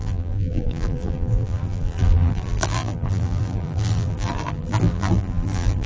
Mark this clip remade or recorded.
remade